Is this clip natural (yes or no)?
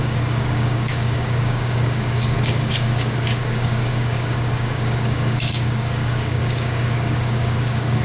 no